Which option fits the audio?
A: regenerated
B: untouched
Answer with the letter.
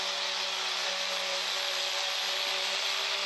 B